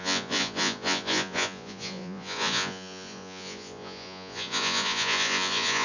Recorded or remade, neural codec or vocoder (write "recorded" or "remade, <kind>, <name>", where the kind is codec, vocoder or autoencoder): remade, vocoder, Vocos